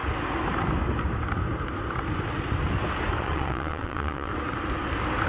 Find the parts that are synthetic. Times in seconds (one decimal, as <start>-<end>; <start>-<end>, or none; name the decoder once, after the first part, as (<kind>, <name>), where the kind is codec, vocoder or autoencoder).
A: 3.2-4.3 (vocoder, WaveNeXt)